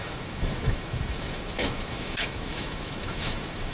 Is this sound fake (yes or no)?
yes